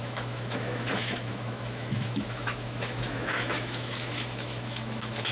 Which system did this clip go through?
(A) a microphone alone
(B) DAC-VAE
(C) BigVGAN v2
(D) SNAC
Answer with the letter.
B